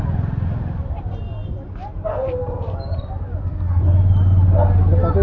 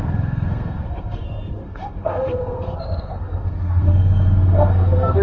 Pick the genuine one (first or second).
first